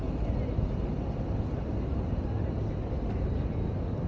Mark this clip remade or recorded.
recorded